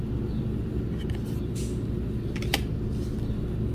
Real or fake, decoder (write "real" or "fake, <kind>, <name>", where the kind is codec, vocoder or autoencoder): real